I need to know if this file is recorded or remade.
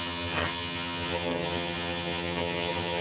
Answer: remade